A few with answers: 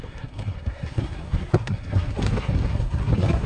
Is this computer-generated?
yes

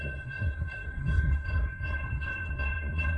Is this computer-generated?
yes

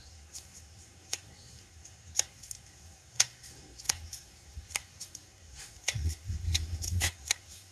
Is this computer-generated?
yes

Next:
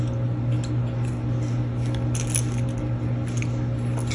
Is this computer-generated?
no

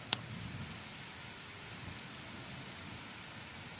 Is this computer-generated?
no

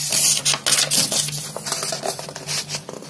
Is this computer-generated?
no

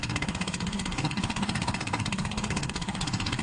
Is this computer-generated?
yes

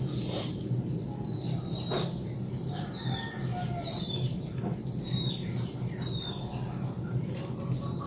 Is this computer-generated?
no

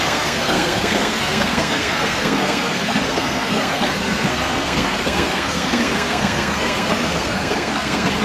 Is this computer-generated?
yes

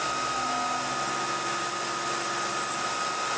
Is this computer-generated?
no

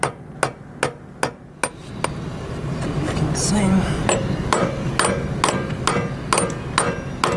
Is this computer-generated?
no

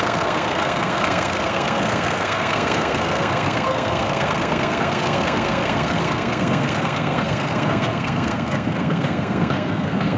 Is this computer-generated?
yes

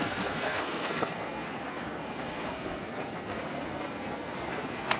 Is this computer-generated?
yes